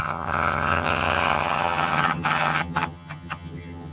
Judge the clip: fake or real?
fake